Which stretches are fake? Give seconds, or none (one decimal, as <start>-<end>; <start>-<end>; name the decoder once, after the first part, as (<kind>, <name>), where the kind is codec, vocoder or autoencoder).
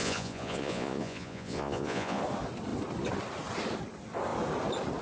0.0-2.2 (vocoder, Vocos)